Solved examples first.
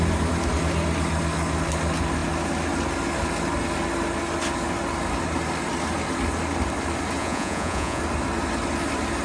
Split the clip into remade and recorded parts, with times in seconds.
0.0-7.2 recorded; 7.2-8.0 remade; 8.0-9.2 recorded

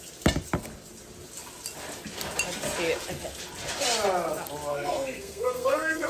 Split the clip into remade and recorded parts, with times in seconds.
0.0-4.7 recorded; 4.7-6.1 remade

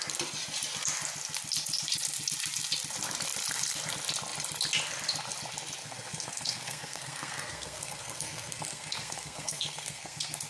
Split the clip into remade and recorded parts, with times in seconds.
0.0-5.8 recorded; 5.8-10.5 remade

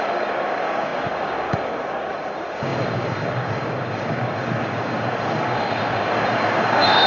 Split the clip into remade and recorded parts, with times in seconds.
0.0-7.1 remade

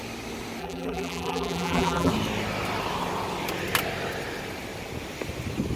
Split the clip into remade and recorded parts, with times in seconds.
0.0-0.6 recorded; 0.6-2.1 remade; 2.1-5.8 recorded

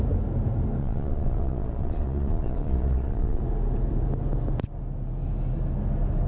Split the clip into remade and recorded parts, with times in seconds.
0.0-0.8 recorded; 0.8-3.4 remade; 3.4-6.3 recorded

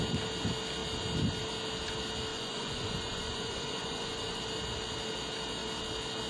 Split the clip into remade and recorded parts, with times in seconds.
0.0-2.3 recorded; 2.3-4.4 remade; 4.4-6.3 recorded